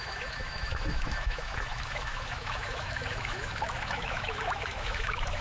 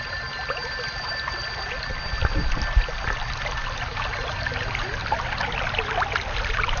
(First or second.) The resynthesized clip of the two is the first